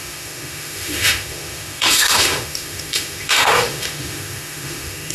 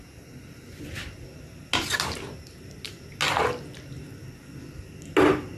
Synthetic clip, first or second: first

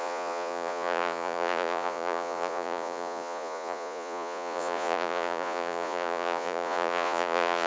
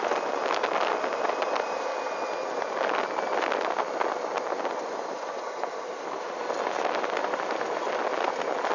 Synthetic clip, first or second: first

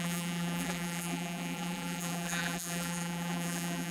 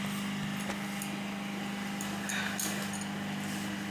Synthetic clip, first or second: first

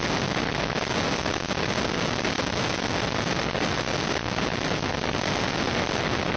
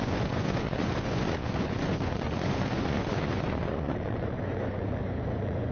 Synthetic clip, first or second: second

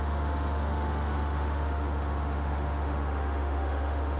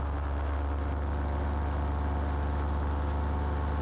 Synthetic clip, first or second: first